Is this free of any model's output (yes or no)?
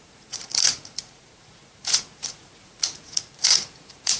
no